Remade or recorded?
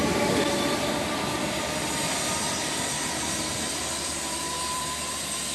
remade